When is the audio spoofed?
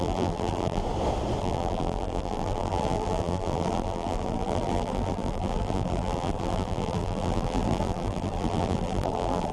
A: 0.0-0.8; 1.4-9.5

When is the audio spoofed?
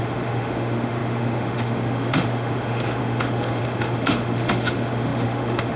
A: 0.0-5.8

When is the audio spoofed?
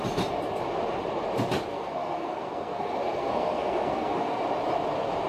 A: 1.7-4.4